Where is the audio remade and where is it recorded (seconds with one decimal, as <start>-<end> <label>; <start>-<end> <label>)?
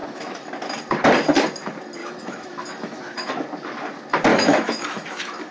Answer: 0.0-0.5 remade; 0.5-2.0 recorded; 2.0-3.3 remade; 3.3-4.3 recorded; 4.3-5.5 remade